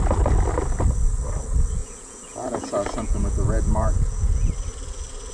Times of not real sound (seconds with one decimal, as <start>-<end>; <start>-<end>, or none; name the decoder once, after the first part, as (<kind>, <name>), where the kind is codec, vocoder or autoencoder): 1.8-4.5 (vocoder, Vocos)